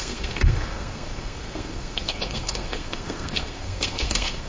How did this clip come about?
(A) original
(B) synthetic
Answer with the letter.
B